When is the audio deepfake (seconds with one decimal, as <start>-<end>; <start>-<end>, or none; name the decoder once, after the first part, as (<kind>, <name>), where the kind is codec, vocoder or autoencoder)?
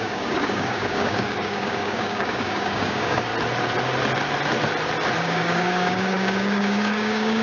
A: 0.0-3.3 (codec, DAC); 5.2-7.4